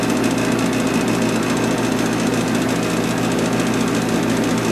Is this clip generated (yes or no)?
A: no